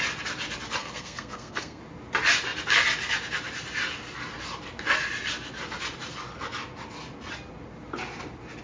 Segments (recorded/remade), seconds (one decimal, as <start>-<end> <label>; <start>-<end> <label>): 0.0-0.8 recorded; 0.8-1.8 remade; 1.8-8.6 recorded